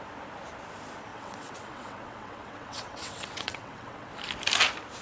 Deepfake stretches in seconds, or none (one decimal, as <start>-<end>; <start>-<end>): 1.1-4.1